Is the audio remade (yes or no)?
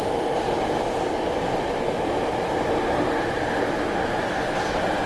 no